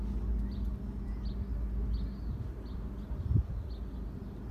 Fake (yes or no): no